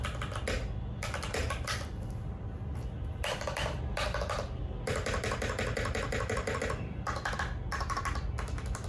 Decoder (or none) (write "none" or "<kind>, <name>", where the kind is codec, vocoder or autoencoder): none